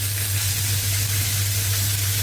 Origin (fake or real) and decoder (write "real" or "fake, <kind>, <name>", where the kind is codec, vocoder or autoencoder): real